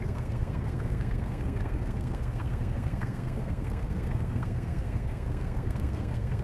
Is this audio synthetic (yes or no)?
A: yes